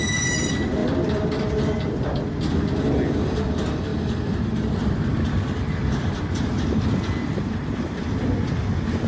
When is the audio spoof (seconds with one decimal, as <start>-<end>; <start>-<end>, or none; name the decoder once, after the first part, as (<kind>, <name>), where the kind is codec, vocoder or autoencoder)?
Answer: 0.8-2.3 (vocoder, BigVGAN v2); 3.9-6.2